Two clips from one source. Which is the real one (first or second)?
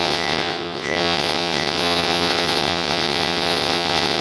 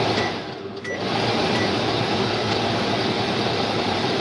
second